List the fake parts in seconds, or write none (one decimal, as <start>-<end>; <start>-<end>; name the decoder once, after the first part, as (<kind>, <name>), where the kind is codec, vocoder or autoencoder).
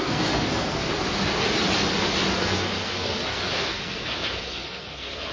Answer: 0.0-0.9 (codec, SNAC); 2.4-5.3